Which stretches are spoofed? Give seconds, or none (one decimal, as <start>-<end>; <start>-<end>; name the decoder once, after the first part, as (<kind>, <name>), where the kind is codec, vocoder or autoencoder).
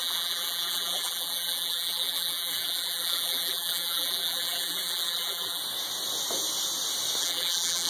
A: 0.0-5.6 (vocoder, BigVGAN v2); 7.2-7.9